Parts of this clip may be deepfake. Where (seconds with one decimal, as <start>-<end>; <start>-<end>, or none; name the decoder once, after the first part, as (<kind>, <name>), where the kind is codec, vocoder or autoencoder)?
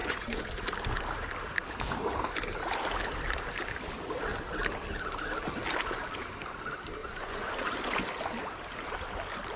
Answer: 0.0-0.5 (vocoder, Vocos); 7.0-7.5